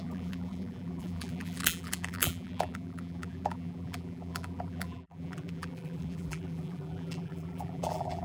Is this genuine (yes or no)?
no